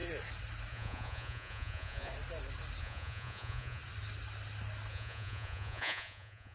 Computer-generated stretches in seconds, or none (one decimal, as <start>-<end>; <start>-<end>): 0.7-2.1; 2.8-3.8; 4.9-6.5